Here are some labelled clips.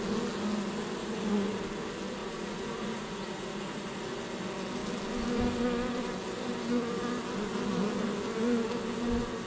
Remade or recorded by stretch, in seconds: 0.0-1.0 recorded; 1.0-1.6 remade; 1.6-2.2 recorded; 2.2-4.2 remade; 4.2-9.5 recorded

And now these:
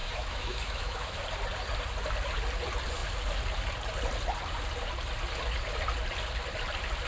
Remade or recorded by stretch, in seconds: 0.0-1.2 remade; 1.2-7.1 recorded